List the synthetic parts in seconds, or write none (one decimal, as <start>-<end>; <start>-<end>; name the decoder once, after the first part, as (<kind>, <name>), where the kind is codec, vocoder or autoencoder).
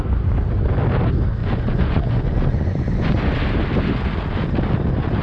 1.4-3.3 (vocoder, Vocos)